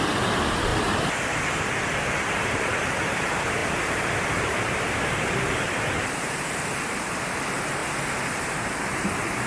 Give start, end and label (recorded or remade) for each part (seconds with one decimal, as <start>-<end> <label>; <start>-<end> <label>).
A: 0.0-0.7 remade; 0.7-2.4 recorded; 2.4-7.8 remade; 7.8-8.5 recorded; 8.5-9.5 remade